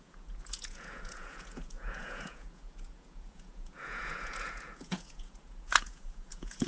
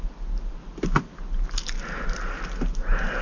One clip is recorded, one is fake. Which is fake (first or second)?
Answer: first